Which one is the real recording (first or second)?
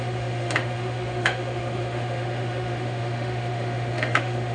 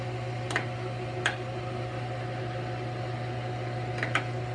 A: second